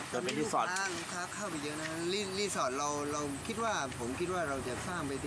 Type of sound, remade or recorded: recorded